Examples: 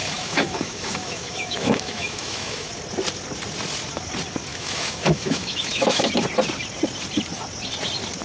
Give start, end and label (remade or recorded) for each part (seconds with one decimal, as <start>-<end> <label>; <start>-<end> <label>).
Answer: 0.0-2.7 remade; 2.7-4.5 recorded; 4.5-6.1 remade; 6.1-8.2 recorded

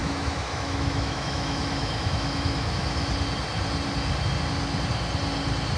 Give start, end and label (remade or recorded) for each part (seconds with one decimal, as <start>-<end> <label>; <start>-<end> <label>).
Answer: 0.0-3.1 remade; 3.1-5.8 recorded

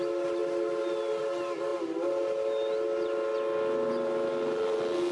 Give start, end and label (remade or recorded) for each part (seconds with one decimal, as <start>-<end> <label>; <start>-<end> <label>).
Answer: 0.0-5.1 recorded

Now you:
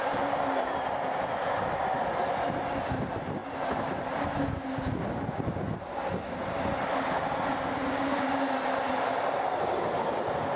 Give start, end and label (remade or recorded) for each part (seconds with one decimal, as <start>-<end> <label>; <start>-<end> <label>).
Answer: 0.0-10.6 recorded

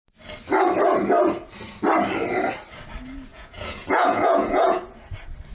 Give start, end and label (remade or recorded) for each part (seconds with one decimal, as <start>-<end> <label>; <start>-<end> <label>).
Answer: 0.0-3.3 recorded; 3.3-4.8 remade; 4.8-5.5 recorded

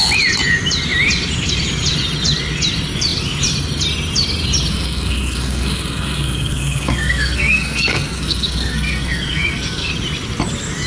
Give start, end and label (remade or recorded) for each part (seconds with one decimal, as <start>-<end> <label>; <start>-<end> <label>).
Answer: 0.0-4.7 recorded; 4.7-9.9 remade; 9.9-10.9 recorded

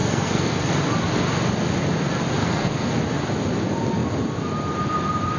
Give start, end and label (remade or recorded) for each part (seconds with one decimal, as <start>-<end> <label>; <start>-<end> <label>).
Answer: 0.0-0.7 remade; 0.7-2.4 recorded; 2.4-2.9 remade; 2.9-5.4 recorded